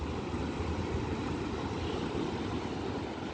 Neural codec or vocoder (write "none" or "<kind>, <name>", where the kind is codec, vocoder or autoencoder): none